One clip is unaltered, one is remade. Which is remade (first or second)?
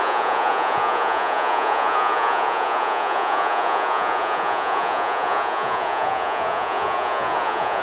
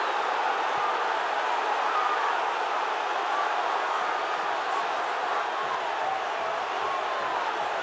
first